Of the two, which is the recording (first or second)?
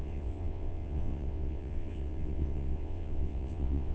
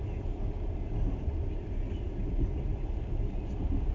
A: second